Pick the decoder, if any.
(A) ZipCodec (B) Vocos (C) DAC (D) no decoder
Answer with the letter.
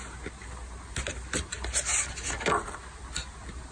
D